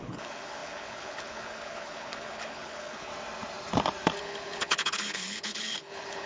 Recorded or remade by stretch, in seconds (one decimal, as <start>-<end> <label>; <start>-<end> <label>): 0.0-3.1 remade; 3.1-4.2 recorded; 4.2-6.3 remade